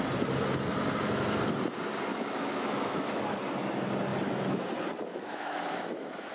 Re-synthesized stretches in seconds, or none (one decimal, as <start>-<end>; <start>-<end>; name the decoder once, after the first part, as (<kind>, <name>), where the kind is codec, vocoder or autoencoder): 2.1-3.2 (autoencoder, DAC-VAE); 5.1-6.3